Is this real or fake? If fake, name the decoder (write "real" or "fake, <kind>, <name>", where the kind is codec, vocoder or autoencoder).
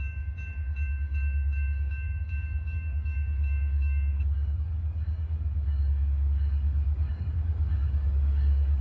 fake, codec, DAC